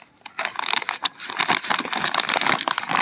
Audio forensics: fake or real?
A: real